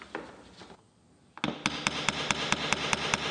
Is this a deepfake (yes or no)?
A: no